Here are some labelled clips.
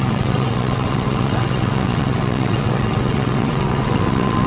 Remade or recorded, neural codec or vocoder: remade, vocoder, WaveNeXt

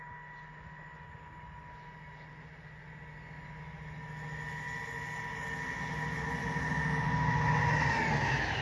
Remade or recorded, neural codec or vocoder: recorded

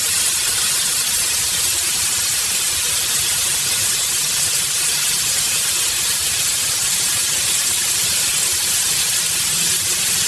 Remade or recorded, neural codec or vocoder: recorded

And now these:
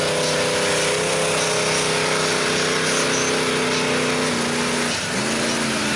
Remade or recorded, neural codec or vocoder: recorded